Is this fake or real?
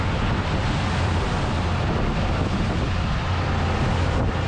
real